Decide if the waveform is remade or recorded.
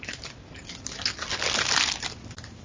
recorded